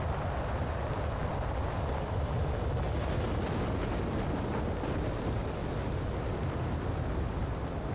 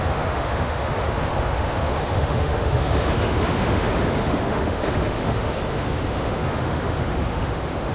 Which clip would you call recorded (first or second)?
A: first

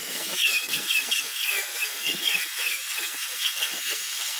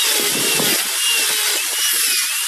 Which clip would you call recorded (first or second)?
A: second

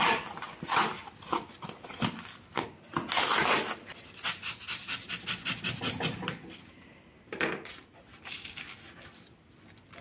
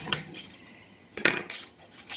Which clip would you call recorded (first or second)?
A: first